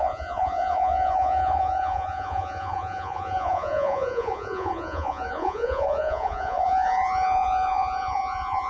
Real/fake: fake